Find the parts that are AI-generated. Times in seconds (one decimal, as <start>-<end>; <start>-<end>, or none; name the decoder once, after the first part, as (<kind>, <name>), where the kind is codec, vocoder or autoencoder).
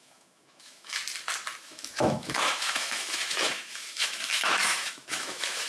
0.0-1.0 (autoencoder, DAC-VAE); 1.6-5.7